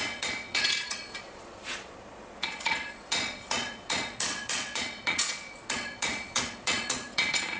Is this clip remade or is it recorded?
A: remade